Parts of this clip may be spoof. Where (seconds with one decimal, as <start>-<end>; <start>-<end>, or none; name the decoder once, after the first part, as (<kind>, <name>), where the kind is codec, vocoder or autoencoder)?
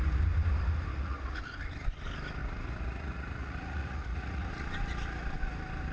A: 0.9-1.4 (vocoder, Vocos); 2.4-4.5